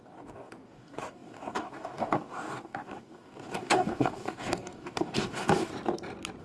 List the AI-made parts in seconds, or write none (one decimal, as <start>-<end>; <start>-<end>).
0.0-5.7